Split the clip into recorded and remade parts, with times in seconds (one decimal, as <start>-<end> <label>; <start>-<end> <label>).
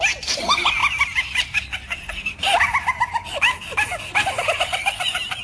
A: 0.0-5.4 recorded